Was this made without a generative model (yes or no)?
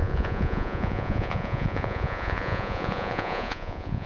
no